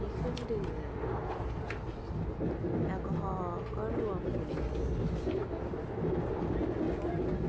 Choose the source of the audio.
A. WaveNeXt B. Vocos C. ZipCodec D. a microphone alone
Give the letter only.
D